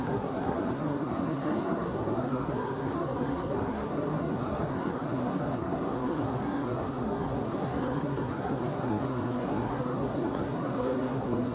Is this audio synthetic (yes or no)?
yes